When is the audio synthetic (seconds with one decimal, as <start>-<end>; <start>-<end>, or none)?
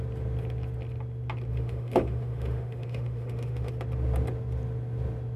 1.5-3.7